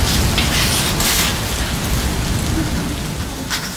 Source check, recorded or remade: recorded